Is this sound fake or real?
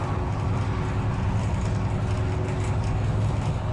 real